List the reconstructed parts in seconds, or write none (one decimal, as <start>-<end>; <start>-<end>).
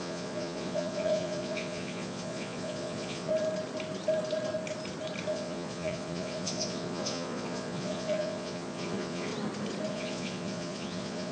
0.0-3.3; 5.3-9.3; 9.9-11.3